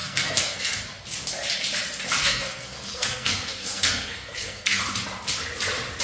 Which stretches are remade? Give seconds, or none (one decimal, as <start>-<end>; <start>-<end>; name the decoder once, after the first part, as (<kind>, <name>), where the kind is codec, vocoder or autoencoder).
0.0-0.8 (codec, SNAC); 2.2-4.8